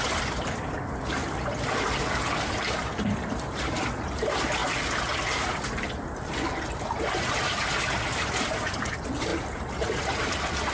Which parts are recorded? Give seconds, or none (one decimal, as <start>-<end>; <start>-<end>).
4.6-8.1; 9.3-10.0